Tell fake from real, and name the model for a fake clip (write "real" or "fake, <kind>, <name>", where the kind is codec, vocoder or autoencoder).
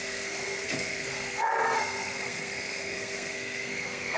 fake, codec, SNAC